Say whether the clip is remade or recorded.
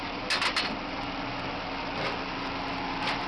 recorded